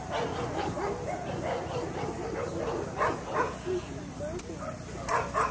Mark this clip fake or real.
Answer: real